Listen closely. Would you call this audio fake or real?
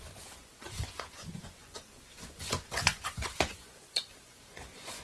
fake